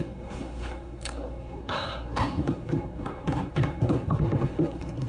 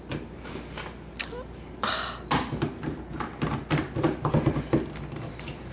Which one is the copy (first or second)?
first